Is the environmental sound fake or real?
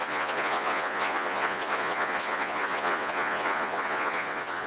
fake